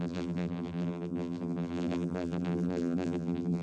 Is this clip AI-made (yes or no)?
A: yes